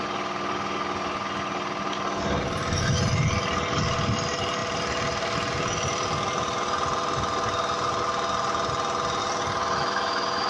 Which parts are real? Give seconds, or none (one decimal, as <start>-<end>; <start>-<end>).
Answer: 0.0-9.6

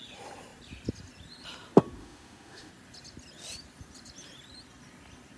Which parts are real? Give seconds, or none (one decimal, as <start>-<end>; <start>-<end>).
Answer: 0.0-2.0; 2.7-5.4

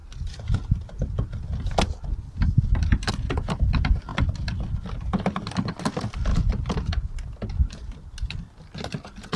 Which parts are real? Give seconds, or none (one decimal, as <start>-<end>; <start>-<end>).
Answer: 0.0-9.4